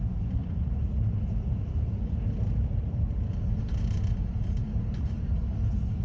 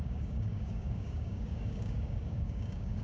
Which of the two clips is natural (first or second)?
first